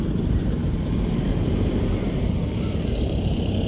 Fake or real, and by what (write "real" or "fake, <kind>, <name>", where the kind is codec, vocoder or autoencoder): fake, vocoder, BigVGAN v2